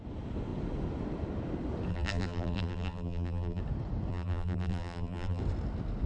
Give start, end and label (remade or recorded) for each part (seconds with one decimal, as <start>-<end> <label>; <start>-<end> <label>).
0.0-1.9 recorded; 1.9-3.6 remade; 3.6-4.1 recorded; 4.1-5.4 remade; 5.4-6.1 recorded